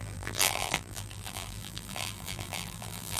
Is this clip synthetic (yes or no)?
yes